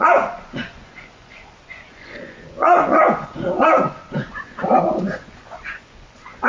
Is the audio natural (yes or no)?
no